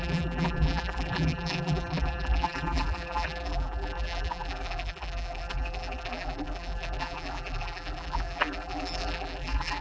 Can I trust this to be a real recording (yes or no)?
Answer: no